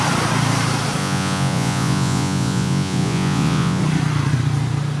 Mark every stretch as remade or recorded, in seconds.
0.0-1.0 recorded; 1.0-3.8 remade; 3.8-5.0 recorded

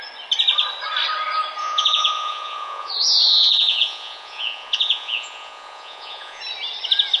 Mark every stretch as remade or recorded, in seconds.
0.0-1.6 recorded; 1.6-2.9 remade; 2.9-3.3 recorded; 3.3-6.4 remade; 6.4-7.2 recorded